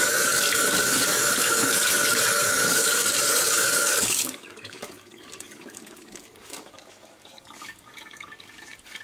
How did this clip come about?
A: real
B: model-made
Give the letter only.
B